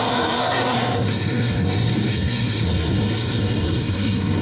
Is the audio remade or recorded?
remade